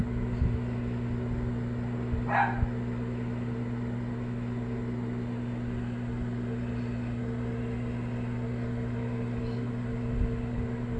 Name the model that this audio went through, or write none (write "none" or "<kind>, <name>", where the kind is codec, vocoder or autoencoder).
none